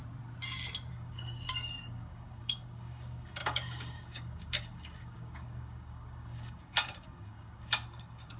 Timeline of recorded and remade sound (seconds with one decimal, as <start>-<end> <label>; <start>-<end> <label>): 0.0-0.9 recorded; 0.9-8.4 remade